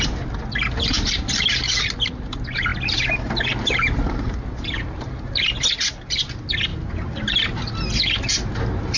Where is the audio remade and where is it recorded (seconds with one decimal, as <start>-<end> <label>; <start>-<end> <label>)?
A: 0.0-9.0 recorded